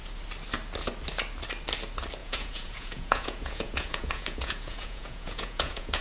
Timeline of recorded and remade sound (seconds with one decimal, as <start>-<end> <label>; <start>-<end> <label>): 0.0-2.2 recorded; 2.2-6.0 remade

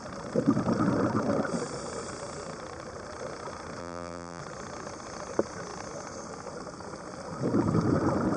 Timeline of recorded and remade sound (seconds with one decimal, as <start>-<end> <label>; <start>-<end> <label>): 0.0-3.8 recorded; 3.8-4.4 remade; 4.4-8.4 recorded

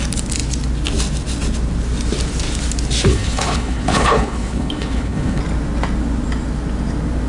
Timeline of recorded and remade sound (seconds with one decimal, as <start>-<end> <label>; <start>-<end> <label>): 0.0-3.1 recorded; 3.1-5.4 remade; 5.4-7.3 recorded

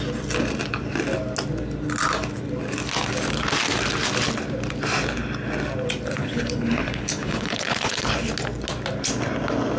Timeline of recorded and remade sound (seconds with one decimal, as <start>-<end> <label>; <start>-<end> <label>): 0.0-6.2 recorded; 6.2-8.1 remade; 8.1-9.8 recorded

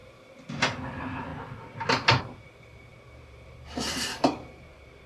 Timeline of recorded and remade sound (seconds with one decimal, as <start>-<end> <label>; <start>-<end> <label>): 0.0-0.6 remade; 0.6-2.9 recorded; 2.9-5.1 remade

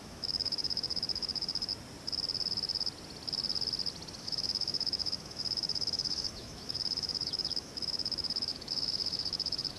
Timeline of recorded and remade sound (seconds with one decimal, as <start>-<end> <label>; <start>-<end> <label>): 0.0-1.7 remade; 1.7-4.2 recorded; 4.2-9.8 remade